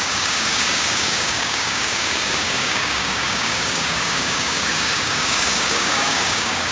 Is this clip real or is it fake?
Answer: fake